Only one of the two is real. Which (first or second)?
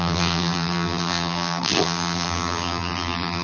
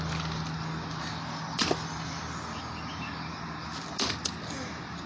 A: second